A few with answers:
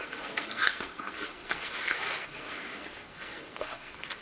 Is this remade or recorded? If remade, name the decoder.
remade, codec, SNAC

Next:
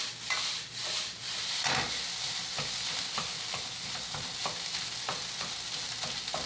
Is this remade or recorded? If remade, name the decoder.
recorded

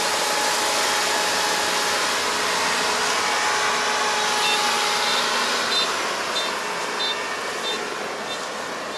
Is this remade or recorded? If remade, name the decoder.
recorded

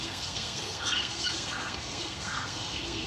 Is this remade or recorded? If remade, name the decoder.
remade, codec, SNAC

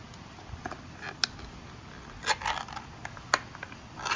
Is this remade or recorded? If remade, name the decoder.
recorded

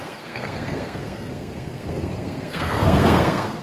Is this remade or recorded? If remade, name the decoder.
remade, codec, SNAC